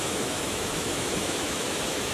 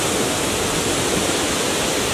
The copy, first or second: first